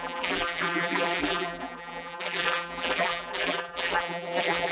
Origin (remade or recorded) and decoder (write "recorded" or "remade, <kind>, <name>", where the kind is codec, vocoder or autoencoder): remade, vocoder, BigVGAN v2